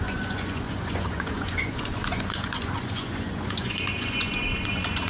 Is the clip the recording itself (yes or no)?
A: no